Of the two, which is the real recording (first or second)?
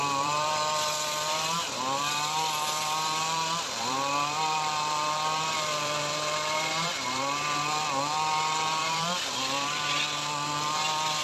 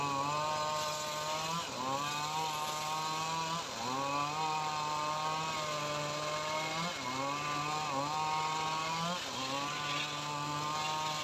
second